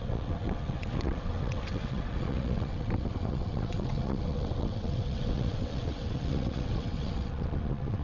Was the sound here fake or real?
fake